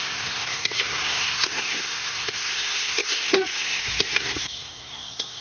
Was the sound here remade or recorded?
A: remade